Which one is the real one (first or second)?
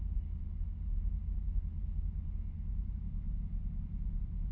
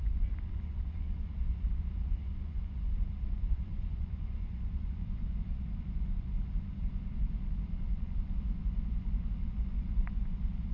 first